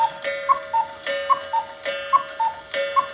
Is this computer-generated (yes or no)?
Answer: no